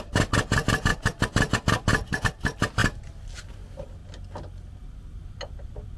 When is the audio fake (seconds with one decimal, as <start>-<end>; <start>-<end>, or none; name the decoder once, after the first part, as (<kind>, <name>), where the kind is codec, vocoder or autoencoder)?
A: none